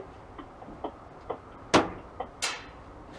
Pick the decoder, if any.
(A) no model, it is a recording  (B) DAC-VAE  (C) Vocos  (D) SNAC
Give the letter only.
A